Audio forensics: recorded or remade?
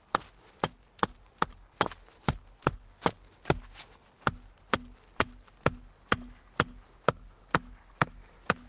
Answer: recorded